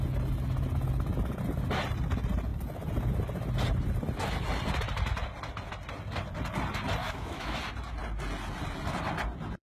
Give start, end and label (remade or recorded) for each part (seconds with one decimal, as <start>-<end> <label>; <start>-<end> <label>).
0.0-7.0 recorded; 7.0-7.6 remade; 7.6-9.7 recorded